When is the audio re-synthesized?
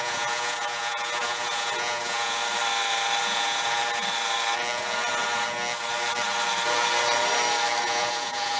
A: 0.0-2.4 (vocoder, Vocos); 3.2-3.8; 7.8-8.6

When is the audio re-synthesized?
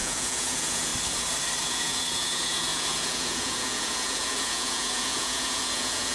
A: 0.0-0.9 (vocoder, Vocos); 1.6-6.1